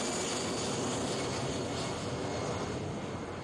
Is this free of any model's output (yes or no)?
yes